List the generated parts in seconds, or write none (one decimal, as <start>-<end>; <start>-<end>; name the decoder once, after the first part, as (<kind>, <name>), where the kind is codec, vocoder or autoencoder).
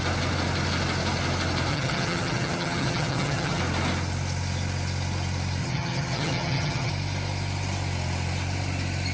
1.7-3.6 (vocoder, HiFi-GAN); 5.6-6.9